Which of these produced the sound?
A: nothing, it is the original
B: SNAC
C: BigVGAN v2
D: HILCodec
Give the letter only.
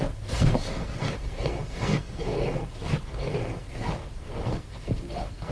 B